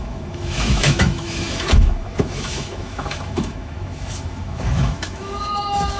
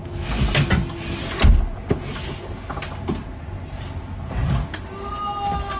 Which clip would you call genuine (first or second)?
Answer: second